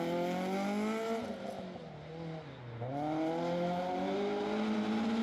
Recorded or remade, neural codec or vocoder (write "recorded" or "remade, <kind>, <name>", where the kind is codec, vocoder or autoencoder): recorded